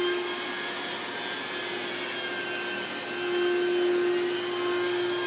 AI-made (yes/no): no